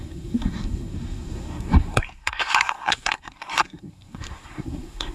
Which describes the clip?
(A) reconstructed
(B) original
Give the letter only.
A